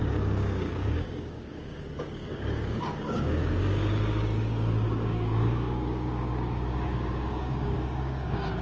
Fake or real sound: fake